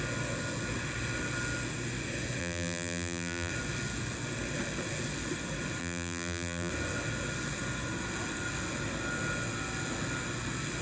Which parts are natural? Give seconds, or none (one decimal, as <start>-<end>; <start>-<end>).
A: 0.0-2.4; 3.5-5.8; 6.7-10.8